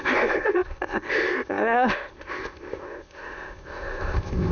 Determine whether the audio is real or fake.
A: fake